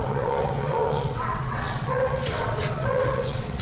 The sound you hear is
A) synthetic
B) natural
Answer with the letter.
A